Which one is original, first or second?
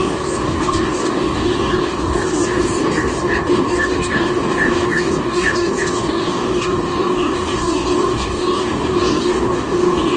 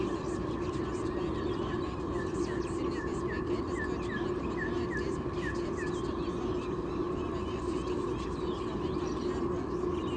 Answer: second